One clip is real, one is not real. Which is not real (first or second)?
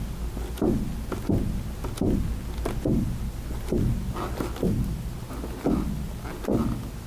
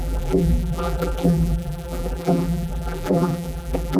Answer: second